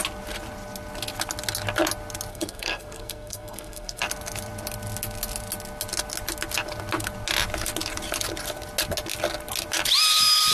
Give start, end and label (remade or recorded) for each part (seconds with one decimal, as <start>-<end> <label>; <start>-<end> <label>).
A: 0.0-2.3 recorded; 2.3-4.0 remade; 4.0-10.5 recorded